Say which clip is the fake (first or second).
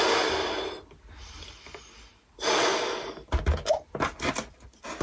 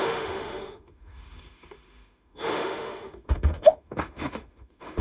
second